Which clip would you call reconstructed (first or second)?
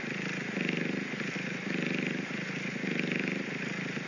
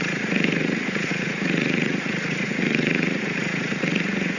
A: second